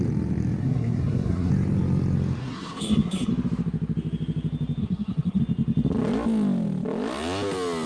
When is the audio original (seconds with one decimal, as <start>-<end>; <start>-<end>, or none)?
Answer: 0.0-0.6; 1.5-2.4; 3.3-4.8; 5.4-7.9